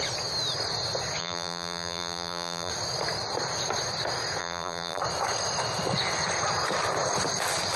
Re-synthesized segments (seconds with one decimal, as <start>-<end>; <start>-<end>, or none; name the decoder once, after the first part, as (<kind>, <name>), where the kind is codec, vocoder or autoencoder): 1.2-2.7 (vocoder, BigVGAN v2); 4.4-5.0